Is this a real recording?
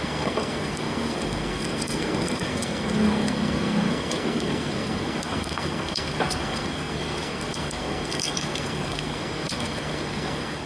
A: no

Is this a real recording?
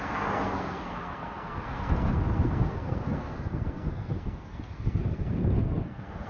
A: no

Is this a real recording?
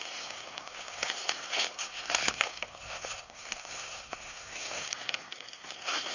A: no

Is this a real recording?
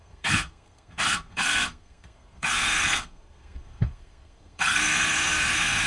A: no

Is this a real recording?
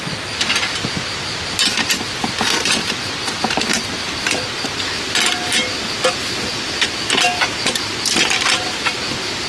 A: yes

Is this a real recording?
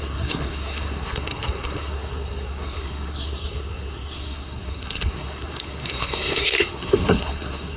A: no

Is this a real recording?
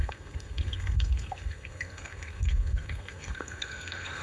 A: no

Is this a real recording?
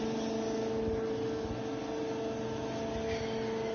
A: yes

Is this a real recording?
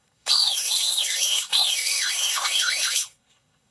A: no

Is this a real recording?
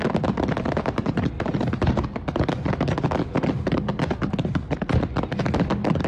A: yes